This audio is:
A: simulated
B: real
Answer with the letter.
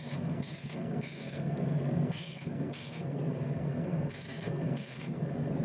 A